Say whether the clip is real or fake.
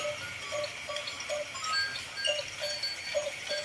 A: real